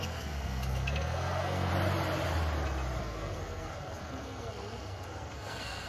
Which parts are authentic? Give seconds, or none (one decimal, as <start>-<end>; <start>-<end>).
1.7-3.0